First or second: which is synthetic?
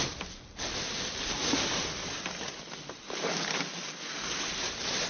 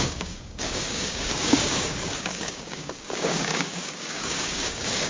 second